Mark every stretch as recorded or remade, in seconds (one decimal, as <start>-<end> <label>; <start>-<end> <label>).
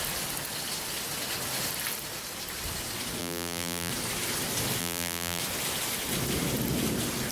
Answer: 0.0-3.2 recorded; 3.2-3.9 remade; 3.9-4.8 recorded; 4.8-5.4 remade; 5.4-7.3 recorded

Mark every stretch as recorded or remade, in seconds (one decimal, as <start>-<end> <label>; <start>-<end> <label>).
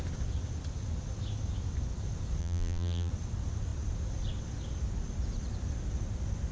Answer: 0.0-2.4 recorded; 2.4-3.1 remade; 3.1-6.5 recorded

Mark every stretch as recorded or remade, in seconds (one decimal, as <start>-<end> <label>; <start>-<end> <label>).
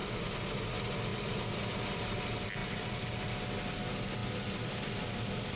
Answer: 0.0-1.1 recorded; 1.1-2.2 remade; 2.2-2.6 recorded; 2.6-3.2 remade; 3.2-5.6 recorded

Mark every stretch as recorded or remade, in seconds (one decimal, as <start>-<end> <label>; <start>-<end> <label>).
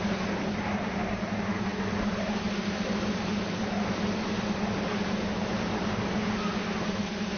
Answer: 0.0-7.4 remade